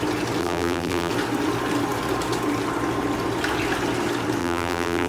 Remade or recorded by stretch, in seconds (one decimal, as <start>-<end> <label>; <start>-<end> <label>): 0.0-0.4 recorded; 0.4-1.1 remade; 1.1-4.4 recorded; 4.4-5.1 remade